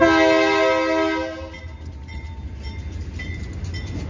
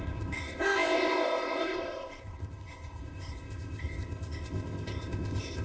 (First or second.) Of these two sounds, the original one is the first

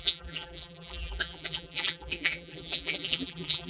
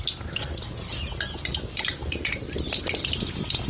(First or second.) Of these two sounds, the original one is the second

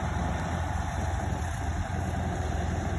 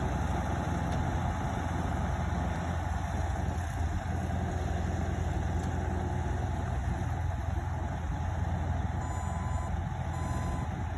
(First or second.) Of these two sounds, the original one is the second